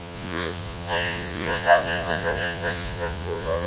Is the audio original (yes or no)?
no